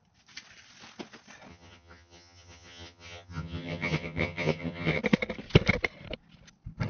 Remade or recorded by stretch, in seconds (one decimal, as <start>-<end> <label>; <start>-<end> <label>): 0.0-1.5 recorded; 1.5-5.0 remade; 5.0-6.9 recorded